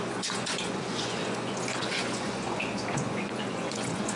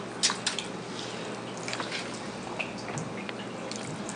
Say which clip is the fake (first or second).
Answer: first